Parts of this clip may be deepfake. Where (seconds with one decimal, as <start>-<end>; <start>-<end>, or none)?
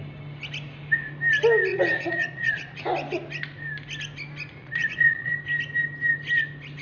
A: 1.7-2.8; 4.6-5.3